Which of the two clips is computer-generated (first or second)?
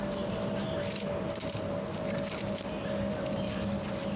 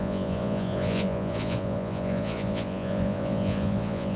second